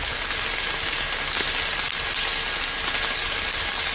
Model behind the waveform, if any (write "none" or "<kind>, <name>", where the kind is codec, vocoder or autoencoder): none